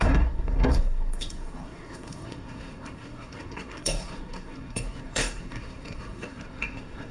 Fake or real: fake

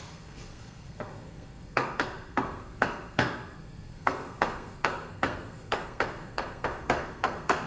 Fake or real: fake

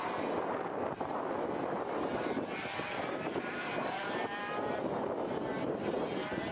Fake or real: real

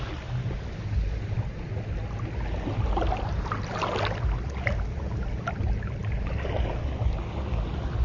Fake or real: real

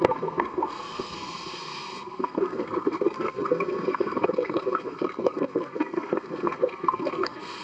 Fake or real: fake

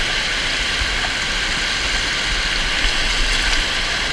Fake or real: real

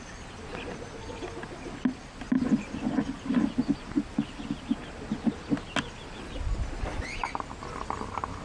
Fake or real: real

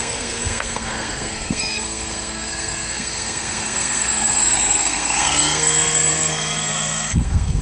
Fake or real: fake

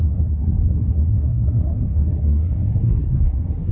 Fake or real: fake